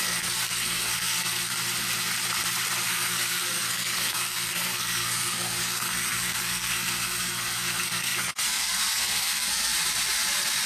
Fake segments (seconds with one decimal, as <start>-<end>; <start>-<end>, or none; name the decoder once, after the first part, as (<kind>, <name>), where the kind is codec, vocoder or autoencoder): 0.0-1.5 (codec, SNAC); 2.9-9.7